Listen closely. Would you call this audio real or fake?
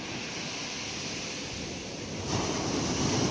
real